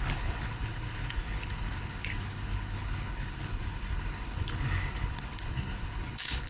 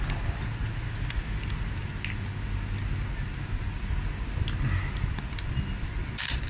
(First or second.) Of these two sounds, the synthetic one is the first